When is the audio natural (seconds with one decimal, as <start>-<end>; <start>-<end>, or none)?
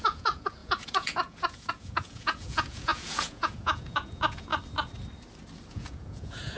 4.5-5.7